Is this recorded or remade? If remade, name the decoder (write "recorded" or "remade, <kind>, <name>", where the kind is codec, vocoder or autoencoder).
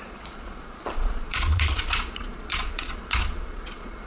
remade, vocoder, Vocos